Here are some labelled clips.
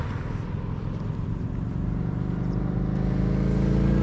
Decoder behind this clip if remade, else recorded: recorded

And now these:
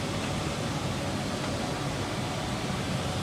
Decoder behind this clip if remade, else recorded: recorded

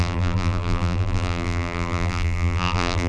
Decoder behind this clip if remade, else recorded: remade, vocoder, BigVGAN v2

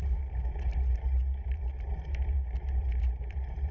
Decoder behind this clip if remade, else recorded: remade, vocoder, BigVGAN v2